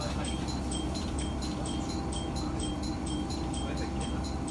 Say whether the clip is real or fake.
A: real